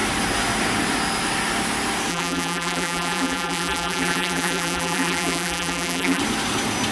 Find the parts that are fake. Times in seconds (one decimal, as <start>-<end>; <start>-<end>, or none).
2.1-6.2